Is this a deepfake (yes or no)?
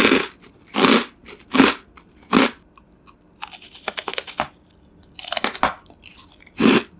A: no